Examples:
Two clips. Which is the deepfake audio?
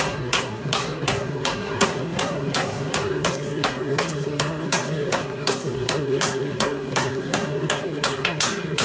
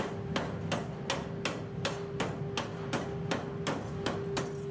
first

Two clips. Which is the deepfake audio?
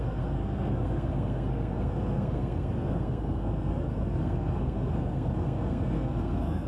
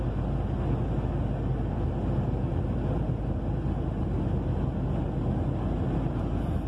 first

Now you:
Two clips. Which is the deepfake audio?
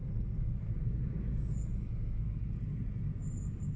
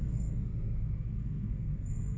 second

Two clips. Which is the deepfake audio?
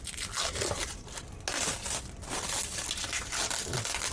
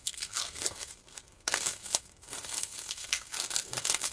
second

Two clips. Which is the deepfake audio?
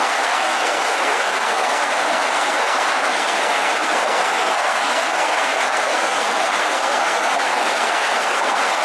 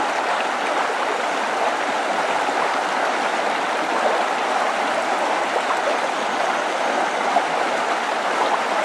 first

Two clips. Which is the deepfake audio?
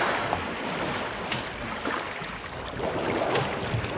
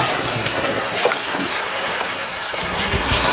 second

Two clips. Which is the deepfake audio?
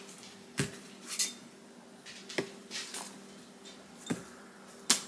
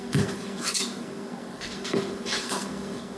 second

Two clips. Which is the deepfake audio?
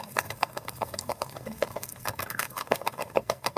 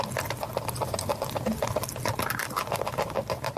first